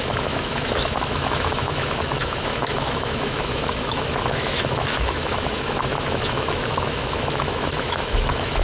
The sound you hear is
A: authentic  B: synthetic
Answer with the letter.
B